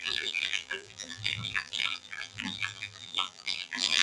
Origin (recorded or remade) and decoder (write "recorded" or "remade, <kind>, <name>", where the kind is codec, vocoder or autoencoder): remade, vocoder, BigVGAN v2